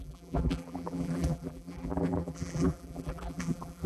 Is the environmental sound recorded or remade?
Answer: remade